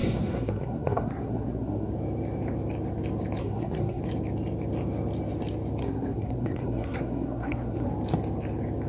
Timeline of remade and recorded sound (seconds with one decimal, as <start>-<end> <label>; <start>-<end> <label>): 0.0-1.9 remade; 1.9-3.4 recorded; 3.4-4.0 remade; 4.0-5.8 recorded; 5.8-7.9 remade; 7.9-8.9 recorded

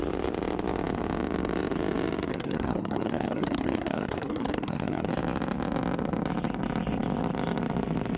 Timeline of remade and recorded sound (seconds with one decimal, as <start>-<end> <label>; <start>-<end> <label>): 0.0-2.3 recorded; 2.3-5.1 remade; 5.1-8.2 recorded

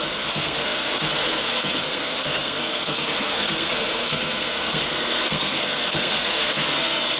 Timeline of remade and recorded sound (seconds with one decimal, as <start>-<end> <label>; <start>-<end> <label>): 0.0-7.2 remade

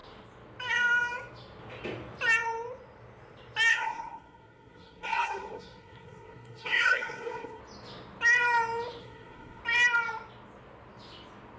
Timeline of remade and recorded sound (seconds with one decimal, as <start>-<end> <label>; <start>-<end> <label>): 0.0-3.7 recorded; 3.7-7.6 remade; 7.6-9.0 recorded; 9.0-9.6 remade; 9.6-11.6 recorded

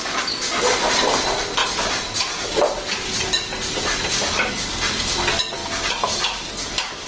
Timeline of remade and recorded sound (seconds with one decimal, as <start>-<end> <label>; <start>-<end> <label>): 0.0-7.1 recorded

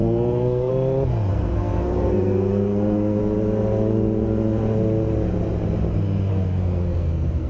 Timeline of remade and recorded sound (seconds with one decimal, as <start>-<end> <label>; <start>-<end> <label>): 0.0-0.7 remade; 0.7-1.3 recorded; 1.3-3.2 remade; 3.2-6.3 recorded; 6.3-7.5 remade